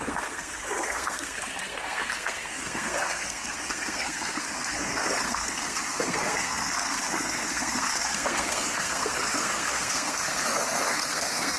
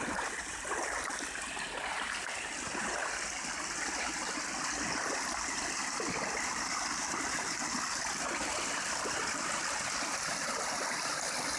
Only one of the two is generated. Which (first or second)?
first